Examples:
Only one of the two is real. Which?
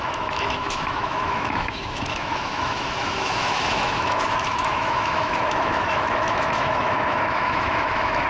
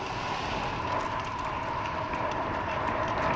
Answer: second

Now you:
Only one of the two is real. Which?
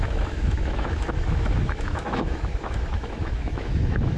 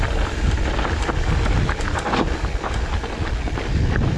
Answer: second